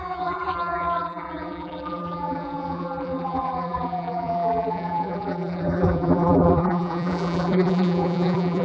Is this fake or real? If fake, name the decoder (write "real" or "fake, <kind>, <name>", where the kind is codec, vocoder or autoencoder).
fake, vocoder, BigVGAN v2